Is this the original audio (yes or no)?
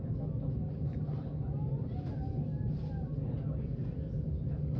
yes